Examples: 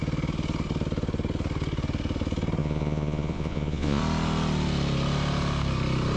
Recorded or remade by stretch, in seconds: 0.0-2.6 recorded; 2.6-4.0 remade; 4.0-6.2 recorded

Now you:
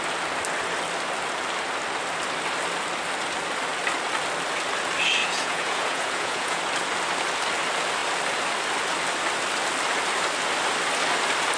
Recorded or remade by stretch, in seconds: 0.0-5.2 recorded; 5.2-6.6 remade; 6.6-11.6 recorded

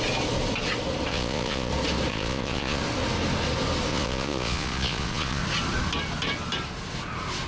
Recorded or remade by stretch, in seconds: 0.0-1.1 recorded; 1.1-1.7 remade; 1.7-2.1 recorded; 2.1-2.8 remade; 2.8-3.9 recorded; 3.9-5.4 remade; 5.4-7.5 recorded

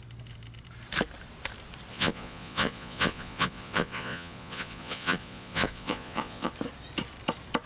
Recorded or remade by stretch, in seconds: 0.0-1.9 recorded; 1.9-6.5 remade; 6.5-7.7 recorded

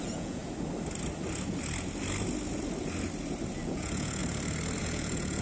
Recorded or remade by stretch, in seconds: 0.0-0.4 remade; 0.4-3.6 recorded; 3.6-4.2 remade; 4.2-4.8 recorded; 4.8-5.4 remade